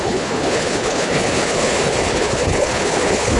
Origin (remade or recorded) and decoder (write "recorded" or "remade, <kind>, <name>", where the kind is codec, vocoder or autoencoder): remade, codec, HILCodec